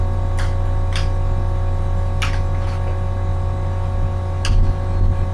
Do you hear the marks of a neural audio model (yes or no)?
no